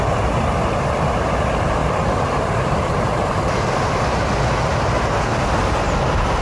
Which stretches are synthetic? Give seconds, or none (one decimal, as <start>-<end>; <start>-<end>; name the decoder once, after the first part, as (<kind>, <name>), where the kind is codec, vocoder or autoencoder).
1.8-3.3 (vocoder, BigVGAN v2)